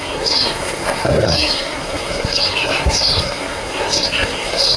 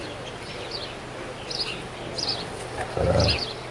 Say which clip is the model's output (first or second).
first